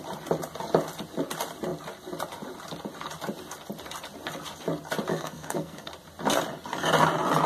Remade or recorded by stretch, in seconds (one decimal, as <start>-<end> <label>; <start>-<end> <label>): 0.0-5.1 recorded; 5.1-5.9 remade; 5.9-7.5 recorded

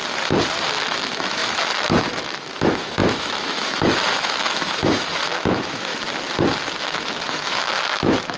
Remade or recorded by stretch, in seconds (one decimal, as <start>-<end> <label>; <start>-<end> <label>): 0.0-0.7 recorded; 0.7-5.9 remade; 5.9-6.8 recorded; 6.8-8.4 remade

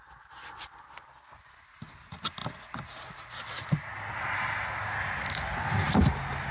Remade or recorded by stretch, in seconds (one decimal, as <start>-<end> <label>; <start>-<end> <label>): 0.0-6.5 recorded

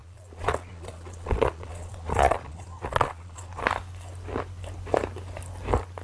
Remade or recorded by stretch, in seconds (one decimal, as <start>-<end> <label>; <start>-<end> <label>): 0.0-3.6 remade; 3.6-6.0 recorded